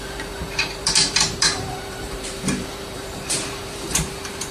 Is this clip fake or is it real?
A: fake